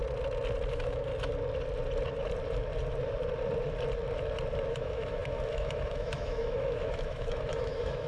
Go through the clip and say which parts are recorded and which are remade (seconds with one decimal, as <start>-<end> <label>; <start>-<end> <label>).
0.0-0.7 recorded; 0.7-1.1 remade; 1.1-4.7 recorded; 4.7-8.1 remade